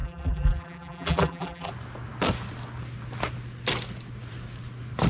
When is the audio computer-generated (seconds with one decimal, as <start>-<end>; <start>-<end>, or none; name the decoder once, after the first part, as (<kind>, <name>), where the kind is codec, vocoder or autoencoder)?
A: 0.0-1.7 (vocoder, BigVGAN v2)